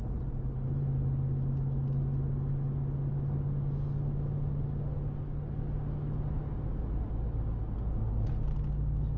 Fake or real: real